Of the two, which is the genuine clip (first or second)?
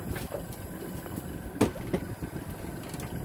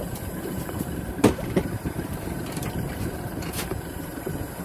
first